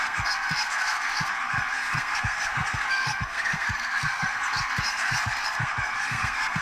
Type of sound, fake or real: fake